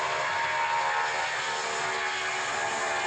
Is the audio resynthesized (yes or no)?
no